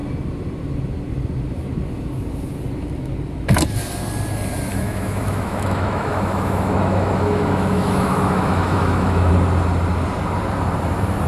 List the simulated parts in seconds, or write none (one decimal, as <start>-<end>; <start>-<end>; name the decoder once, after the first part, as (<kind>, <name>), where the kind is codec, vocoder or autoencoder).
4.7-9.3 (autoencoder, DAC-VAE)